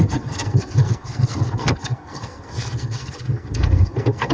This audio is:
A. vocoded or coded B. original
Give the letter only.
A